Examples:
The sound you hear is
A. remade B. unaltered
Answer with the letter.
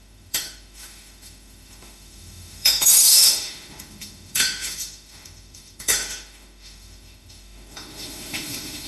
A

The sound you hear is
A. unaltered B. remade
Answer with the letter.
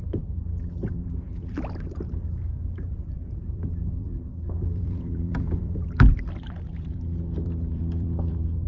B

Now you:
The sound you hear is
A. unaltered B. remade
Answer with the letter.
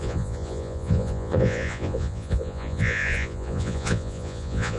B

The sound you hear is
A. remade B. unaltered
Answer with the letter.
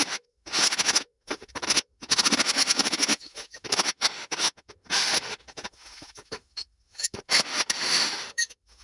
A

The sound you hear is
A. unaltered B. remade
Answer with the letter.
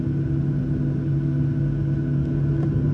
A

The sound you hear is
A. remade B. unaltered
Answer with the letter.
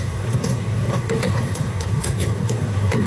A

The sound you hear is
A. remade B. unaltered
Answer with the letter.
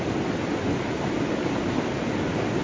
B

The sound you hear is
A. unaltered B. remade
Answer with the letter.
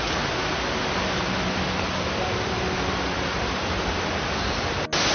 A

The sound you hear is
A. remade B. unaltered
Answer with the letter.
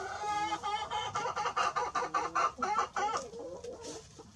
B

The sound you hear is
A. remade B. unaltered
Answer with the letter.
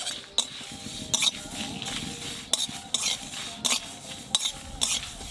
B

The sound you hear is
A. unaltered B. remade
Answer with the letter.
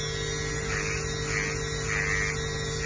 A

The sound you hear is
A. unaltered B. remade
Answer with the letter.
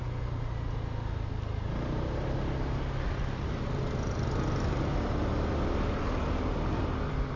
A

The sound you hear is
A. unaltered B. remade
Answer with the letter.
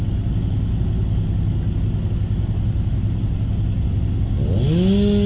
A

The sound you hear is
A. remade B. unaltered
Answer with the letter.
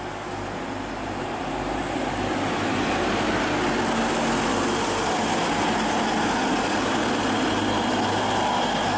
B